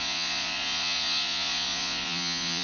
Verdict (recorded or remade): remade